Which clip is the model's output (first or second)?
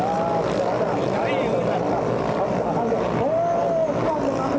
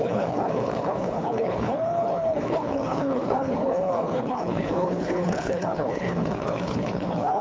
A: second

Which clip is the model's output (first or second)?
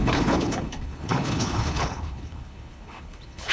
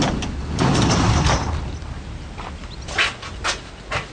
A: first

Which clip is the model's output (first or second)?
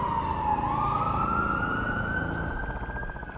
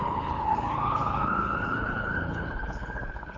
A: second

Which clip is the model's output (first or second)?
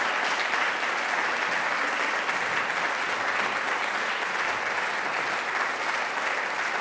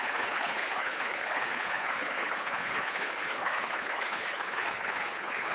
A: second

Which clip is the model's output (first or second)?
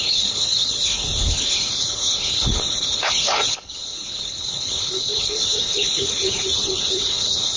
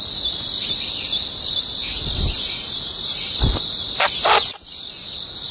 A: first